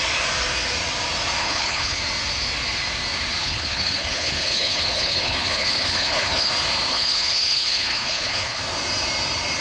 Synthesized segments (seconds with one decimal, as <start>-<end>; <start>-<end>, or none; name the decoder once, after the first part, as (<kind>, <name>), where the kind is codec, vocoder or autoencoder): 1.4-2.0 (codec, HILCodec); 3.4-6.5; 6.9-8.6